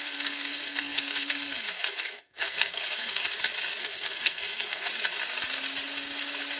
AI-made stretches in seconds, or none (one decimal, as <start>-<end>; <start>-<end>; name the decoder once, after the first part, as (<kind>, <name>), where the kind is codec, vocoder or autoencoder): 0.0-3.2 (codec, SNAC); 3.8-4.9

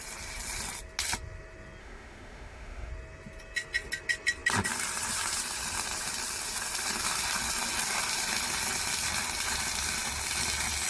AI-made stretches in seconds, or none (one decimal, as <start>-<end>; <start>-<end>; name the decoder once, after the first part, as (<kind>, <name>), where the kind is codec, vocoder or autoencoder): 1.8-2.9 (autoencoder, DAC-VAE)

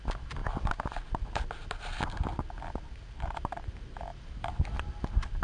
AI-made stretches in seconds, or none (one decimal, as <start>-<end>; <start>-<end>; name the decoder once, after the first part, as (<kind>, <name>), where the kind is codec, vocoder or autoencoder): none